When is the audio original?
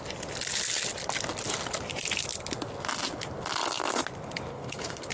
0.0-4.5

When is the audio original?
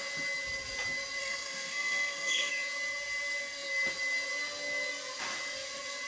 0.0-1.2; 2.5-6.1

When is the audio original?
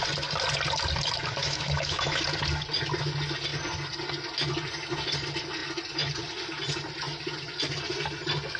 0.0-1.4; 2.2-8.6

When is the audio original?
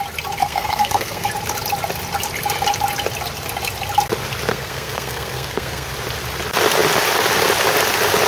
0.0-0.4; 1.3-4.5; 5.9-8.3